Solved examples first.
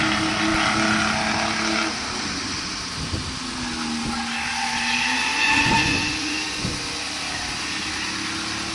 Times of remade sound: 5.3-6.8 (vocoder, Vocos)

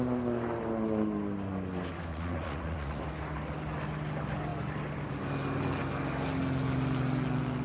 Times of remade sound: 2.1-3.0 (vocoder, Vocos)

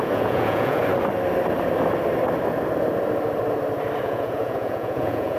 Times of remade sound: 0.0-0.8 (vocoder, Vocos); 4.0-5.4

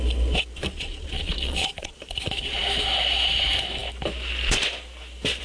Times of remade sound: 0.6-2.0 (vocoder, Vocos)